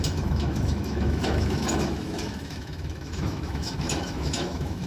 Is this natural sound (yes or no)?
no